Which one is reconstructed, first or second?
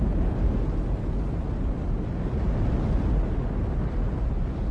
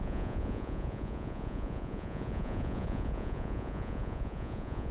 second